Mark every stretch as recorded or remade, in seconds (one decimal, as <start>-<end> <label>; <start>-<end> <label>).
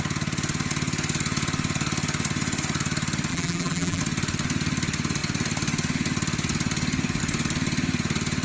0.0-3.3 recorded; 3.3-4.0 remade; 4.0-8.4 recorded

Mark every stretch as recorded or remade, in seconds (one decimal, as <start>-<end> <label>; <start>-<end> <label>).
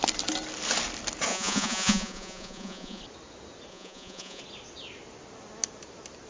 0.0-1.3 recorded; 1.3-3.0 remade; 3.0-3.7 recorded; 3.7-4.4 remade; 4.4-6.3 recorded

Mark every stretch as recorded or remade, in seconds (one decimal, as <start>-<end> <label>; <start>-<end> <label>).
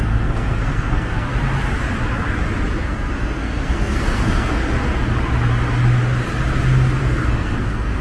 0.0-1.3 remade; 1.3-2.8 recorded; 2.8-4.6 remade; 4.6-7.0 recorded; 7.0-8.0 remade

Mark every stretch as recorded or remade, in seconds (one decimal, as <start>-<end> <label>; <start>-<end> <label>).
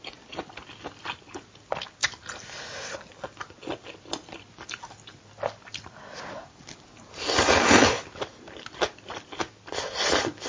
0.0-10.5 recorded